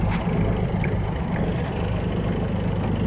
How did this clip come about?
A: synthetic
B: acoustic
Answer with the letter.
B